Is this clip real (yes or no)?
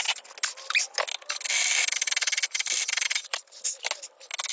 yes